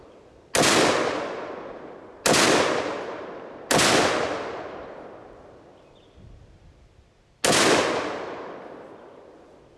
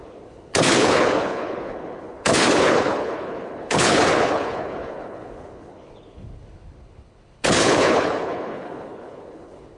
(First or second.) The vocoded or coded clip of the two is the second